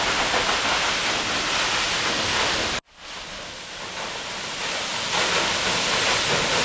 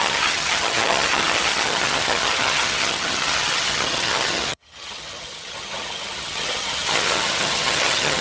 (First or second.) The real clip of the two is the first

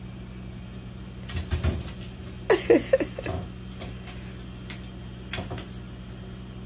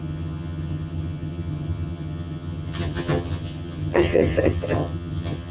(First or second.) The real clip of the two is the first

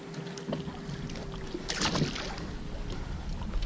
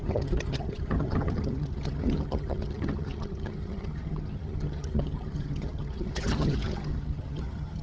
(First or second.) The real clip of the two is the first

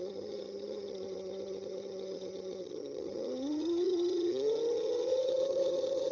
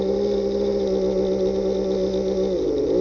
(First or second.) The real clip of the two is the second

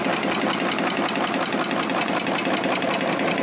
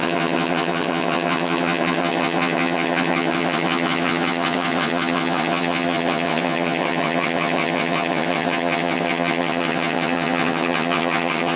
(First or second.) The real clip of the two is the first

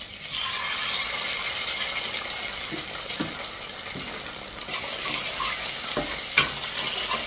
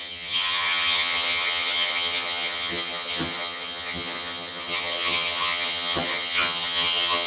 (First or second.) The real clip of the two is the first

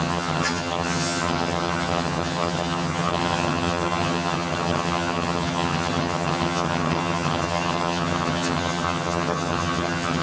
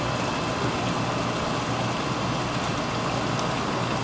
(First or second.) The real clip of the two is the second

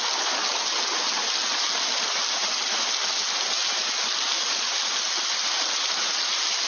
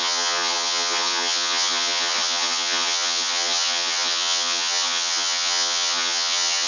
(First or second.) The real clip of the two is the first